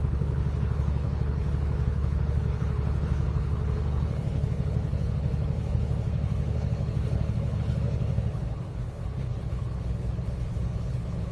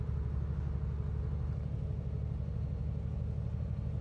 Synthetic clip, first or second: first